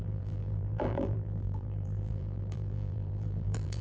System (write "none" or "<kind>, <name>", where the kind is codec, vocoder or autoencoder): vocoder, BigVGAN v2